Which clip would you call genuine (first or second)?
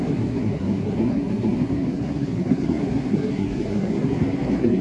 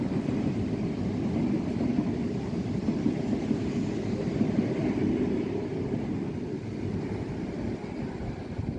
second